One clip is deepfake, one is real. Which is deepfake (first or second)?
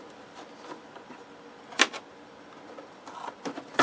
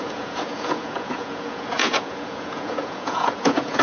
second